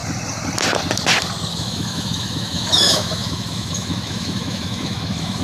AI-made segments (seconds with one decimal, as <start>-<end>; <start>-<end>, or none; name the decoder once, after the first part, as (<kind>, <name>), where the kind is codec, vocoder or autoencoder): 1.5-5.4 (autoencoder, DAC-VAE)